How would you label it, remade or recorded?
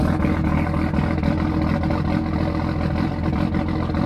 recorded